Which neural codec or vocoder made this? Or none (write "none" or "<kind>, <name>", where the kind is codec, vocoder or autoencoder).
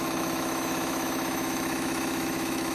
autoencoder, DAC-VAE